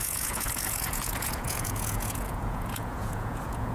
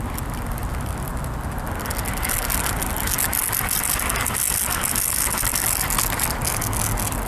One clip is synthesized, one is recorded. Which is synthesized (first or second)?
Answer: first